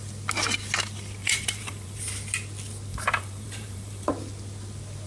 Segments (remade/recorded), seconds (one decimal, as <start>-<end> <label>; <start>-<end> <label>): 0.0-1.2 recorded; 1.2-2.0 remade; 2.0-2.9 recorded; 2.9-4.1 remade; 4.1-5.1 recorded